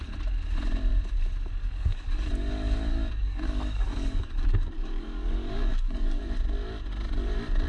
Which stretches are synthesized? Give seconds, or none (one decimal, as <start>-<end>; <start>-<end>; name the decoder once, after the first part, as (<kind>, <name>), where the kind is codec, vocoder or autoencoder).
1.6-6.2 (codec, DAC)